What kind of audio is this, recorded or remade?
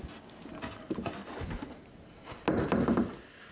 recorded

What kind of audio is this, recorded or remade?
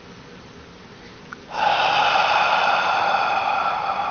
recorded